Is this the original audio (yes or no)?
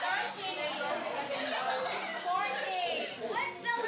yes